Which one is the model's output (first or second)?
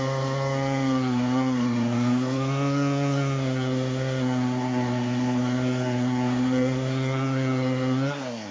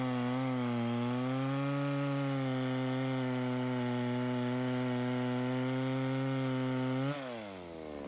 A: first